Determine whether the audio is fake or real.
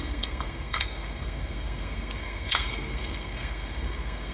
fake